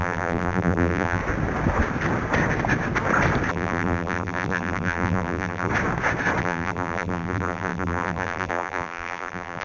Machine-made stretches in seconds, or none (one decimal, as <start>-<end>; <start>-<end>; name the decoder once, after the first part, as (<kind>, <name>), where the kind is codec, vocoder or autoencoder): 0.0-1.2 (vocoder, BigVGAN v2); 3.5-5.7; 6.4-9.6